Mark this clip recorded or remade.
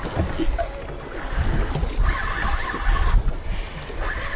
recorded